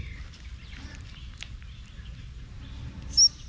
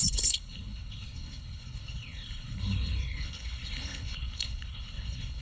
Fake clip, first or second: second